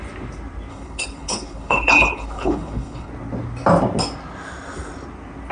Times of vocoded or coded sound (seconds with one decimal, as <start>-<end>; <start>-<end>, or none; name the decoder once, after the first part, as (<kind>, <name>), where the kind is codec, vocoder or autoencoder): 0.7-3.1 (codec, HILCodec)